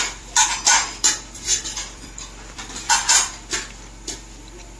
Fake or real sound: fake